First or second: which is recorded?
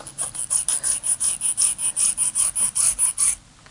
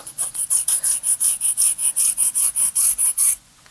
first